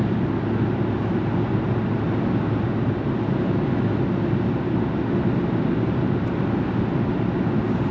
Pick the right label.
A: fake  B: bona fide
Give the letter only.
B